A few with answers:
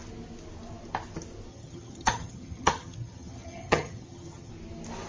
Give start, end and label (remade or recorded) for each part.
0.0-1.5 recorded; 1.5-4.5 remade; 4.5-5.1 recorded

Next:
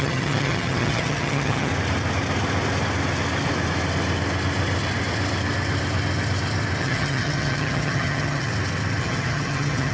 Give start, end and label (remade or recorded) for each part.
0.0-1.7 remade; 1.7-6.8 recorded; 6.8-8.5 remade; 8.5-9.0 recorded; 9.0-9.9 remade